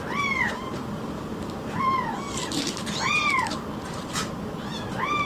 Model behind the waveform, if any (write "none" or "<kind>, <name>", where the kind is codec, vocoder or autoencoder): none